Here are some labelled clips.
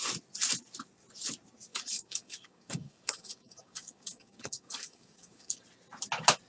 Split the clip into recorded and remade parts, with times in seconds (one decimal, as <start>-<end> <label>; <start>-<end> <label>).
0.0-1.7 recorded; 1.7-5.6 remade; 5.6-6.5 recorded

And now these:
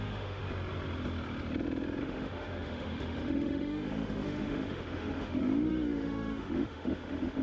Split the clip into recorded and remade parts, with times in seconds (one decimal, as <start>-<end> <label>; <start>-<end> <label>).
0.0-0.4 remade; 0.4-2.0 recorded; 2.0-7.4 remade

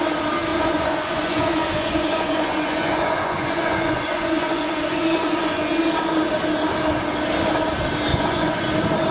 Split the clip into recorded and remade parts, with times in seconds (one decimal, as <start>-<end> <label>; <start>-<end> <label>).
0.0-0.5 recorded; 0.5-5.8 remade; 5.8-8.1 recorded; 8.1-8.7 remade; 8.7-9.1 recorded